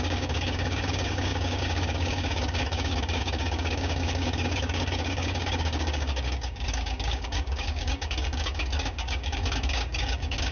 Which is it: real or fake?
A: fake